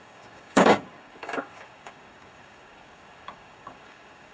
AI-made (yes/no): yes